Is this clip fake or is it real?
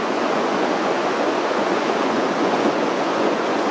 fake